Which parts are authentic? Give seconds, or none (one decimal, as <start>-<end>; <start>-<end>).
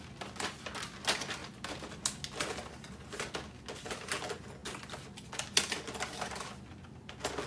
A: 0.0-7.5